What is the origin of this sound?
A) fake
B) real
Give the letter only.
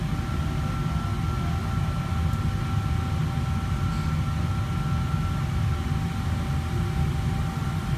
B